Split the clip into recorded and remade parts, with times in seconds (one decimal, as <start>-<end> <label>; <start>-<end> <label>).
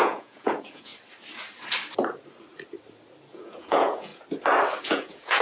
0.0-0.9 remade; 0.9-3.3 recorded; 3.3-4.1 remade; 4.1-4.8 recorded; 4.8-5.4 remade